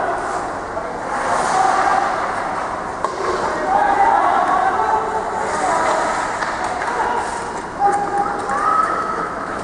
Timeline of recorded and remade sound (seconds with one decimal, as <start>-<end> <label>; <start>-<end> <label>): 0.0-8.7 recorded; 8.7-9.6 remade